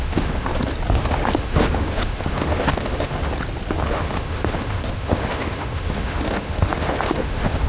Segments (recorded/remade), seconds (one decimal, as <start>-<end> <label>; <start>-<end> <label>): 0.0-0.5 remade; 0.5-1.0 recorded; 1.0-3.3 remade; 3.3-3.9 recorded; 3.9-7.7 remade